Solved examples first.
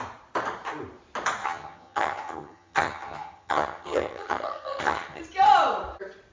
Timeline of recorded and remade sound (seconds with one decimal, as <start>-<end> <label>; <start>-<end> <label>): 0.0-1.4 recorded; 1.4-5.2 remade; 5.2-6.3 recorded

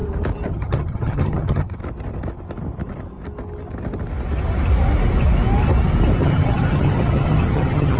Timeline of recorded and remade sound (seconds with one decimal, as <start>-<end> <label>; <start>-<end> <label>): 0.0-0.5 recorded; 0.5-1.8 remade; 1.8-6.2 recorded; 6.2-8.0 remade

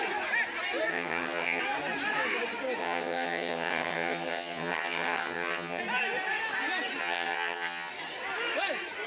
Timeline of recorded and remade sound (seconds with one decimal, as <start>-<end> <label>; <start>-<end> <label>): 0.0-0.9 recorded; 0.9-1.6 remade; 1.6-2.8 recorded; 2.8-5.8 remade; 5.8-7.0 recorded; 7.0-7.9 remade; 7.9-9.1 recorded